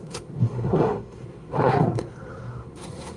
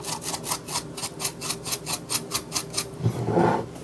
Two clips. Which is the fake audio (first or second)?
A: first